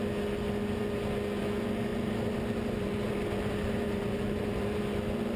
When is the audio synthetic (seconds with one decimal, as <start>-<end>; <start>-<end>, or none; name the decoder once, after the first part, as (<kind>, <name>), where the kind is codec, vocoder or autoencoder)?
1.9-4.8 (vocoder, BigVGAN v2)